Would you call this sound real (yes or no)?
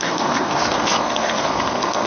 no